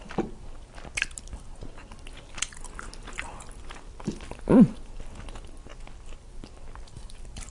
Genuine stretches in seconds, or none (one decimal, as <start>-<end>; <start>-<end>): 0.0-7.5